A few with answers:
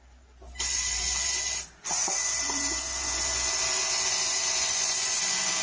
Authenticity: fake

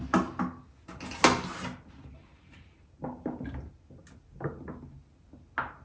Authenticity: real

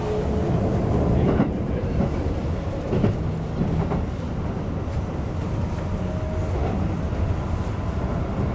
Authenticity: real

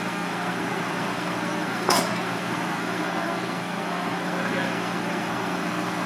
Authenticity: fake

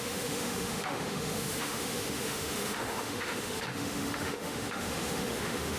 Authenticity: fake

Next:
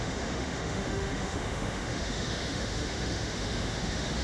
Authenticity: fake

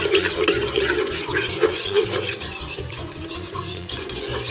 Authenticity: fake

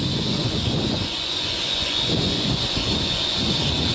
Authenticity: fake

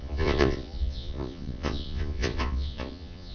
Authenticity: fake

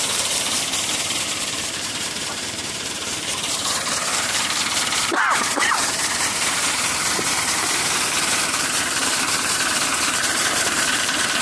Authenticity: fake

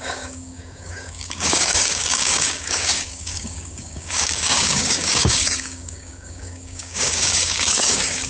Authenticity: fake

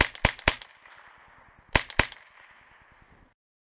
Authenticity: real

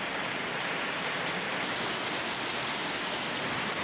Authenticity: real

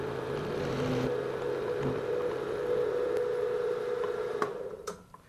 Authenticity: real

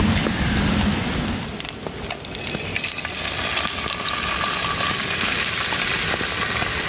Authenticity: real